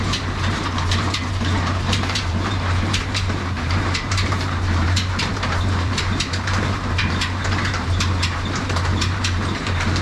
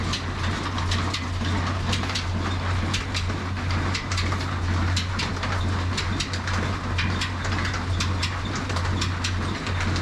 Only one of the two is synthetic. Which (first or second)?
first